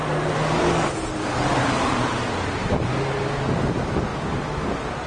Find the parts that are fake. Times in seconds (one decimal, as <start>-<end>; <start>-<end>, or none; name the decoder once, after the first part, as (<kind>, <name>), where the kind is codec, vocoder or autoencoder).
0.6-2.6 (vocoder, BigVGAN v2); 3.4-5.1